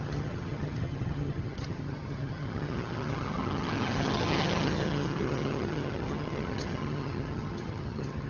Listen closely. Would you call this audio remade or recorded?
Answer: remade